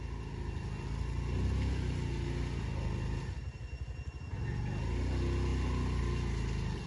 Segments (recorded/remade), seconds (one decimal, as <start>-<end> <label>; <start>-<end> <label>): 0.0-6.9 recorded